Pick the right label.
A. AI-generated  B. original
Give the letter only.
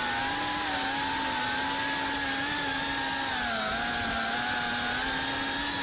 B